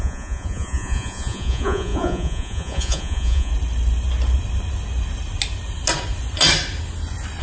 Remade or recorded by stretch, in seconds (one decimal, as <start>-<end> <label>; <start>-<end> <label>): 0.0-3.5 remade; 3.5-7.4 recorded